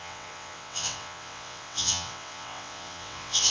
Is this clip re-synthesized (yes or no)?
yes